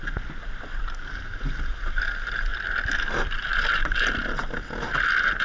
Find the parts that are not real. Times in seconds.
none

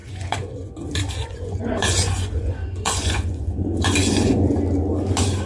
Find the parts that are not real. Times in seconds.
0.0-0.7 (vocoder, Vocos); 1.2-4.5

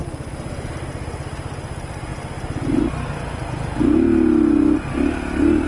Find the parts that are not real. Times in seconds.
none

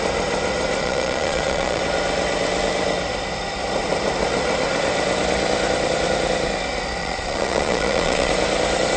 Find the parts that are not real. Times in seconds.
0.8-1.8 (vocoder, Vocos); 7.0-8.3